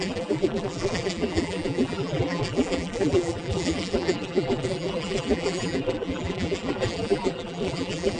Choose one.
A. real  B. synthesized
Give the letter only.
B